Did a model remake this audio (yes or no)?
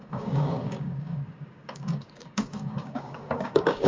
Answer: yes